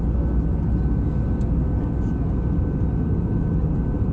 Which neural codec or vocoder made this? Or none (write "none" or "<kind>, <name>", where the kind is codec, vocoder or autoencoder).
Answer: none